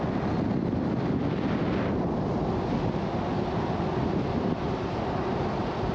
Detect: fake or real real